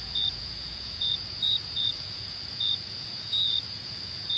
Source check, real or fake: fake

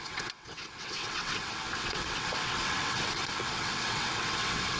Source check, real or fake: fake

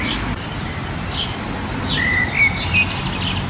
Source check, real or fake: real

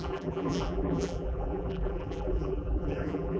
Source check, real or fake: fake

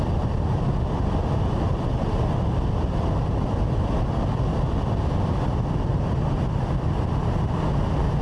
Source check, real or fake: real